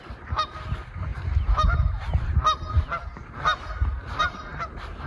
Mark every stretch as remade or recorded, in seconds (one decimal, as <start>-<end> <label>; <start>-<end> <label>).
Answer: 0.0-5.1 remade